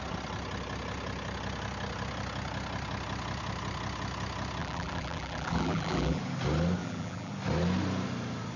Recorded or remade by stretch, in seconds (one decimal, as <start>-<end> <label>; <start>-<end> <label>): 0.0-4.6 recorded; 4.6-6.2 remade; 6.2-6.8 recorded; 6.8-7.3 remade; 7.3-8.6 recorded